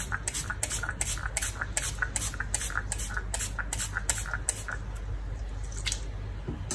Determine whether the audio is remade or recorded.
recorded